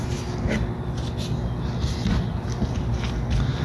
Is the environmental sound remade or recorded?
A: recorded